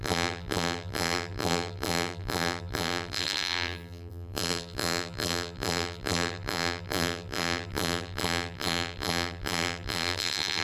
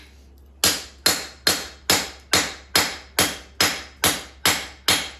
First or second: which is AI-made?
first